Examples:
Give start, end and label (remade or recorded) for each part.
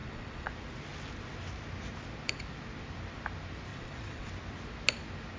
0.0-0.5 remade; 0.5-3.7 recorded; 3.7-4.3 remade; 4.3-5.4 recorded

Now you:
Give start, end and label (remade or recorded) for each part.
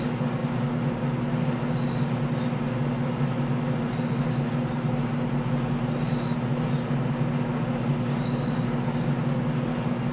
0.0-10.1 recorded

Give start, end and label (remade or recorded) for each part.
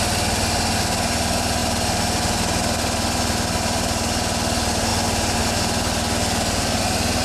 0.0-7.2 recorded